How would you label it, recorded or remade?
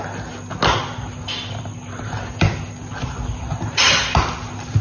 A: recorded